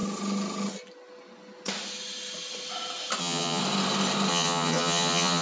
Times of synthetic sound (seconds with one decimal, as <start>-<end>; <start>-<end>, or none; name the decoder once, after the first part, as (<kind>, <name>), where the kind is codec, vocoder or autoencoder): 3.2-3.6 (vocoder, HiFi-GAN); 4.3-5.4